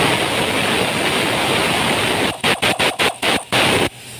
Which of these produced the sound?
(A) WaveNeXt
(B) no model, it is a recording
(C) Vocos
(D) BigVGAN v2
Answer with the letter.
B